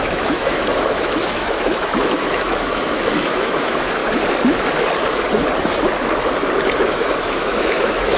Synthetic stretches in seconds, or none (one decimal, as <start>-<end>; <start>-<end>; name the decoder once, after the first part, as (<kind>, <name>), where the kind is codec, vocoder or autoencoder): 0.0-4.0 (autoencoder, DAC-VAE); 6.8-8.2